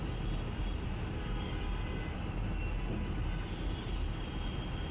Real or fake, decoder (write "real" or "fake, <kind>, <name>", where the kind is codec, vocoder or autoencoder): real